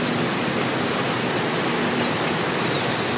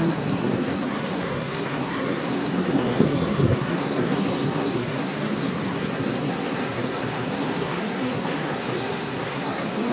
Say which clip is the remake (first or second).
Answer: second